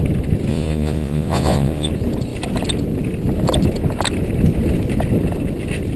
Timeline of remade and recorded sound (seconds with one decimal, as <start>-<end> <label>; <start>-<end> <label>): 0.0-0.5 recorded; 0.5-1.9 remade; 1.9-6.0 recorded